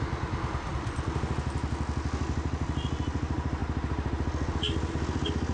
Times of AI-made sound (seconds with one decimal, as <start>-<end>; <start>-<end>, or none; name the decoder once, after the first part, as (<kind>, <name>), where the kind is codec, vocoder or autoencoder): none